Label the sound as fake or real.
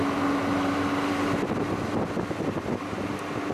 real